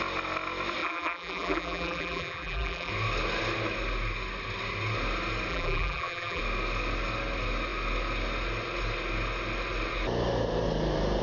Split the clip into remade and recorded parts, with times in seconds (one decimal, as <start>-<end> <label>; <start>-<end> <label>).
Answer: 0.0-0.8 recorded; 0.8-2.9 remade; 2.9-5.5 recorded; 5.5-6.4 remade; 6.4-11.2 recorded